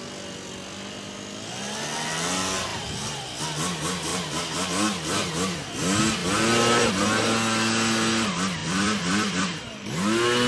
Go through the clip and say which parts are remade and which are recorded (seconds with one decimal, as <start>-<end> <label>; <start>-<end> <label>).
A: 0.0-2.7 recorded; 2.7-3.4 remade; 3.4-4.1 recorded; 4.1-5.7 remade; 5.7-6.2 recorded; 6.2-6.9 remade; 6.9-8.6 recorded; 8.6-9.6 remade; 9.6-10.5 recorded